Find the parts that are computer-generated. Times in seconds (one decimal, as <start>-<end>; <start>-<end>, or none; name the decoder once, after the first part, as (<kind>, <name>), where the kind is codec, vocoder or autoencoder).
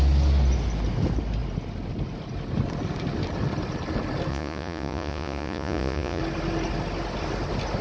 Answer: 4.3-6.2 (vocoder, Vocos)